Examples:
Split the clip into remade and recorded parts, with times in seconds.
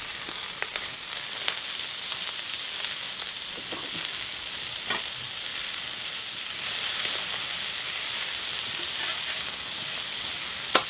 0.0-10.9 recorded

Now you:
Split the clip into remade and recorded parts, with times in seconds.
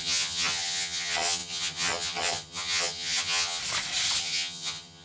0.0-3.6 remade; 3.6-4.2 recorded; 4.2-5.0 remade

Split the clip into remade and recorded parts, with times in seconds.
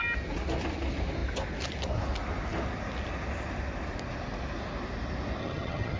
0.0-5.4 recorded; 5.4-6.0 remade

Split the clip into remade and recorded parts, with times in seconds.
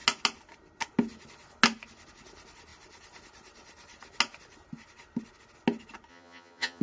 0.0-6.1 recorded; 6.1-6.8 remade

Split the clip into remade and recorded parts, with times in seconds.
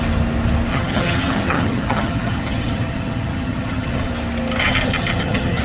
0.0-0.7 recorded; 0.7-4.1 remade; 4.1-4.6 recorded; 4.6-5.6 remade